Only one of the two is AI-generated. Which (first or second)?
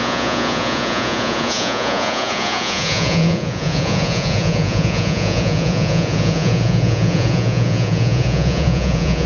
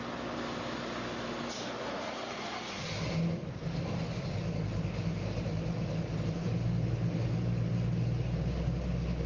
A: first